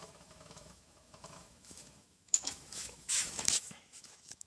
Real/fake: fake